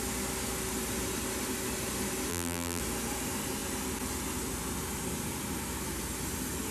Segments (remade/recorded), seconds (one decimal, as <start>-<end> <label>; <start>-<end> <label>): 0.0-2.3 recorded; 2.3-2.8 remade; 2.8-6.7 recorded